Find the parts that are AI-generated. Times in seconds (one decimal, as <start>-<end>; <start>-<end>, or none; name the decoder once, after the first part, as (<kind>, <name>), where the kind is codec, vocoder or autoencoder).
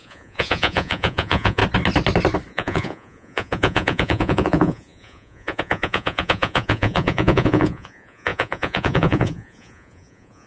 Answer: 0.0-1.6 (vocoder, Vocos); 2.5-10.5